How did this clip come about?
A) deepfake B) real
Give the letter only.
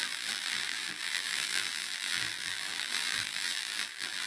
A